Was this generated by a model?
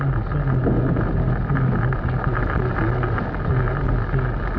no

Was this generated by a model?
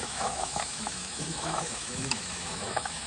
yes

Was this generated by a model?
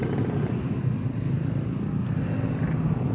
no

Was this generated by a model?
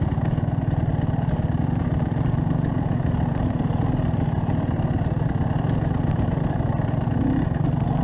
no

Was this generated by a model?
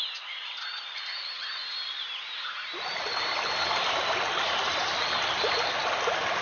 no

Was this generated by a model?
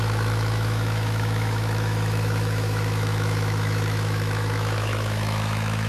yes